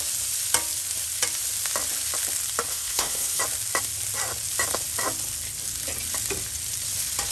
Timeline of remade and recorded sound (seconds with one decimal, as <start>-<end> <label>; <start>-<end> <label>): 0.0-2.7 recorded; 2.7-3.4 remade; 3.4-7.3 recorded